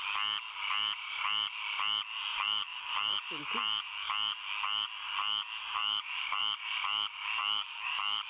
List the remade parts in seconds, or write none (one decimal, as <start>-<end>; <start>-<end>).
2.3-3.4; 5.8-6.4; 7.4-8.3